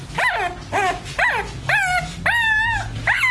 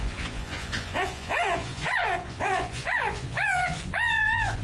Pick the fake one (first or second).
second